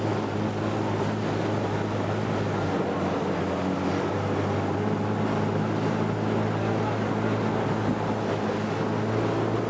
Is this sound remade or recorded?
recorded